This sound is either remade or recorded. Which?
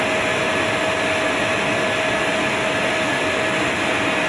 recorded